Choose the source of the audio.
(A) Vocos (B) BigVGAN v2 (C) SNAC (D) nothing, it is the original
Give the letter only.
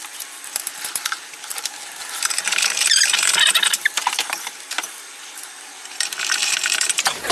B